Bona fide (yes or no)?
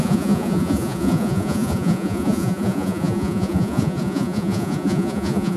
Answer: no